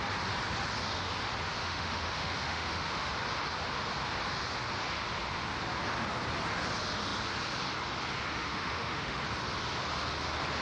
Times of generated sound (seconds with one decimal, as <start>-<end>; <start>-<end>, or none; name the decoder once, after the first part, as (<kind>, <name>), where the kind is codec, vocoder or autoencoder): 1.6-3.1 (autoencoder, DAC-VAE); 8.3-9.2